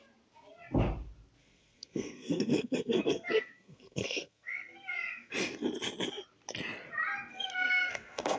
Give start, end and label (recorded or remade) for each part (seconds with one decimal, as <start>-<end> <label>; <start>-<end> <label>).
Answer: 0.0-1.4 recorded; 1.4-5.3 remade; 5.3-7.3 recorded; 7.3-8.4 remade